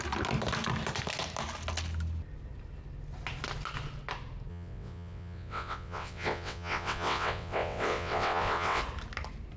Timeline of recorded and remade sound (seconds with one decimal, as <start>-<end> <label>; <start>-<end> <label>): 0.0-4.5 recorded; 4.5-8.8 remade; 8.8-9.6 recorded